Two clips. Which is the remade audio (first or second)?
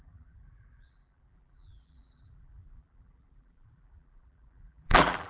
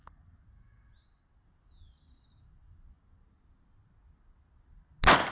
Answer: first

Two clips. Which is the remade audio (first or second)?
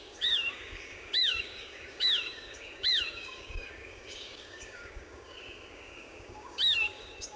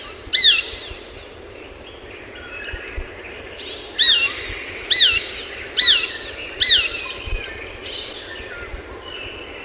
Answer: first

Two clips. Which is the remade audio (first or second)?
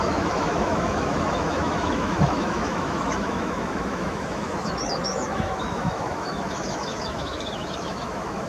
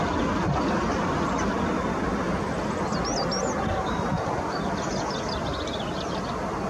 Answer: first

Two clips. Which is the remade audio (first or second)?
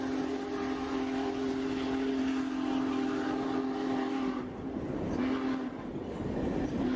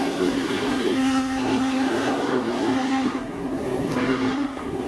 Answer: second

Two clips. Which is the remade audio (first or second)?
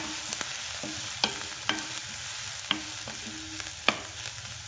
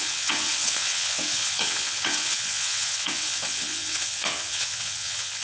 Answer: second